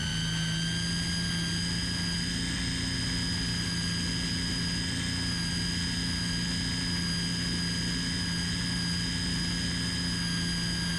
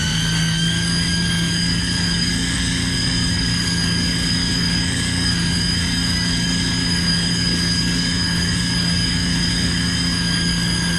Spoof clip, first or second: second